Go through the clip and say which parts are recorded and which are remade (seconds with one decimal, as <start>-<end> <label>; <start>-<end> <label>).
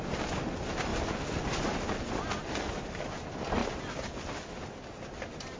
0.0-5.6 recorded